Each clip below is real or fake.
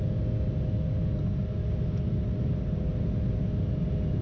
real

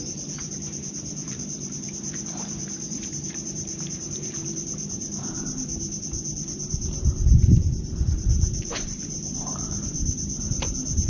fake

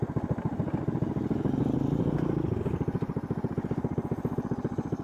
real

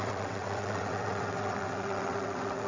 fake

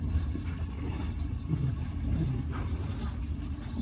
real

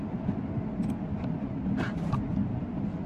real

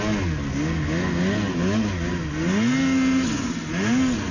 real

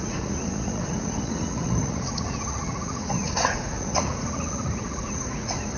fake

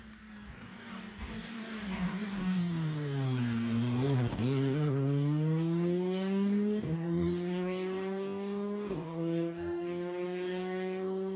fake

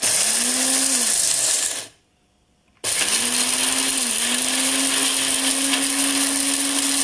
real